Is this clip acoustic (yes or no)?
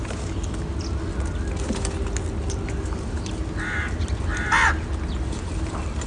yes